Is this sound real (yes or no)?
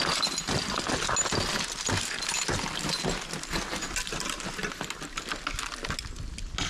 yes